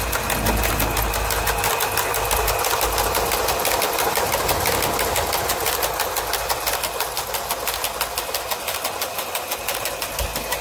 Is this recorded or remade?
recorded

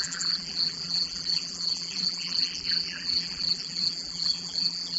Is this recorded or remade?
remade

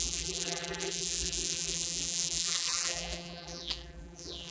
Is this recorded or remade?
remade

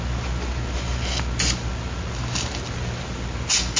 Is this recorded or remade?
recorded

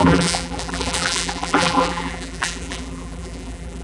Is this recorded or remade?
remade